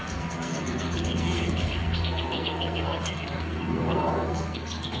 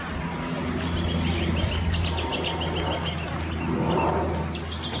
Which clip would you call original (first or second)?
second